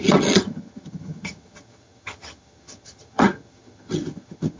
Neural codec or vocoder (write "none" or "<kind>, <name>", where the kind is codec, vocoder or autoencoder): vocoder, HiFi-GAN